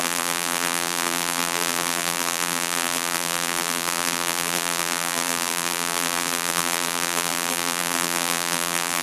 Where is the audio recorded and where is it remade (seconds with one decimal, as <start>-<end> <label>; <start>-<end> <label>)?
0.0-9.0 remade